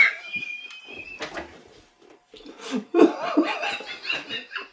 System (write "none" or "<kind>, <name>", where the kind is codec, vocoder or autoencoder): none